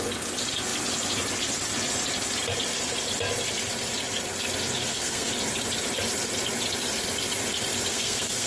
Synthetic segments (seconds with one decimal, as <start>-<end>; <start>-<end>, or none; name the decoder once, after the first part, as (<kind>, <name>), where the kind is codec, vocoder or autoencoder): 4.8-5.3 (codec, SNAC); 7.9-8.5